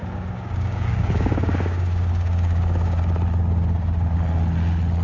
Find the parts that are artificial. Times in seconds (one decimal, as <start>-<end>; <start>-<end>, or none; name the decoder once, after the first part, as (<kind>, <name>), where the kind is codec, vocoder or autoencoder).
0.0-3.0 (codec, DAC)